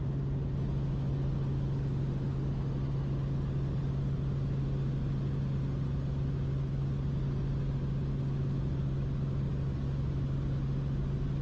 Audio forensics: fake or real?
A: real